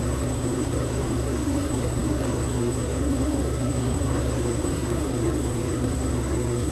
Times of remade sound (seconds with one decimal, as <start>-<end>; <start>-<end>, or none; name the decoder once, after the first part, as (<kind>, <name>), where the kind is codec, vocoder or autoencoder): 0.0-6.7 (codec, SNAC)